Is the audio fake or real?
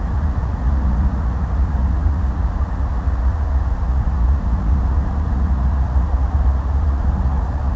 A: fake